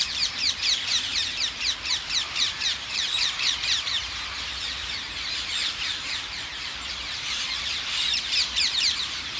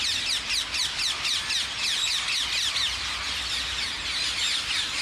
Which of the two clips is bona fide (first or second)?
second